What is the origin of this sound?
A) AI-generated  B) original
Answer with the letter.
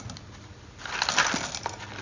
B